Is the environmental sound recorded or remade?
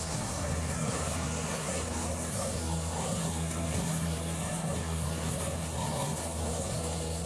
remade